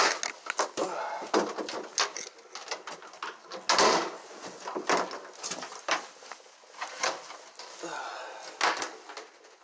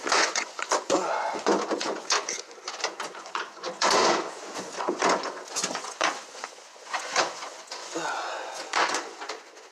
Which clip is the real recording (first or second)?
first